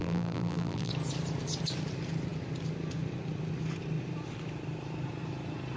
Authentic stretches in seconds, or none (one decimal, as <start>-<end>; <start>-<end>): 0.9-5.8